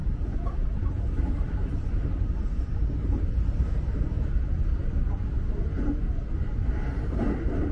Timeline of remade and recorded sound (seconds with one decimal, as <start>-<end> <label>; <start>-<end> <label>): 0.0-3.9 remade; 3.9-7.7 recorded